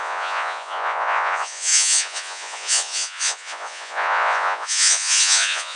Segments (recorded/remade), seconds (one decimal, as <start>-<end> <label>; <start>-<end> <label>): 0.0-5.8 remade